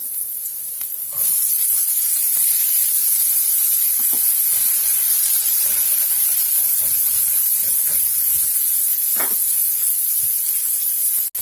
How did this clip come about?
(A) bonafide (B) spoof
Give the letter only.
A